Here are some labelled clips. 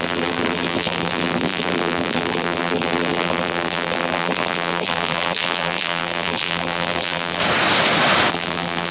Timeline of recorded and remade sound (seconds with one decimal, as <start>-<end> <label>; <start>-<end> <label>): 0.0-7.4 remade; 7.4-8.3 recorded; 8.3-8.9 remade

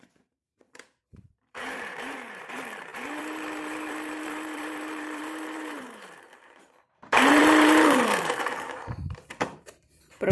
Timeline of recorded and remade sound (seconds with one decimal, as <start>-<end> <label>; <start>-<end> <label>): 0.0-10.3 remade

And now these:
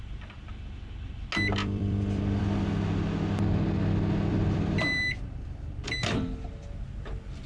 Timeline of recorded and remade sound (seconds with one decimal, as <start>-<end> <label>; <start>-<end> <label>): 0.0-1.6 recorded; 1.6-2.4 remade; 2.4-4.3 recorded; 4.3-6.5 remade; 6.5-7.5 recorded

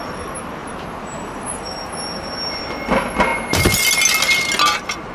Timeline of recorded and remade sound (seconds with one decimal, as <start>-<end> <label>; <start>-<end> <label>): 0.0-0.6 recorded; 0.6-2.6 remade; 2.6-5.1 recorded

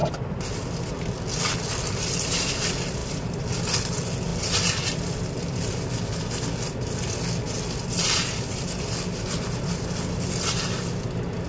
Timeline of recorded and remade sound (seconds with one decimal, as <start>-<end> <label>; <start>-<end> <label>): 0.0-3.0 recorded; 3.0-3.6 remade; 3.6-11.5 recorded